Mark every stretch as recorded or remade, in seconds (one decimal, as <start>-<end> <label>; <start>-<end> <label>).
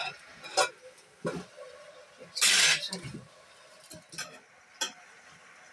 0.0-5.7 recorded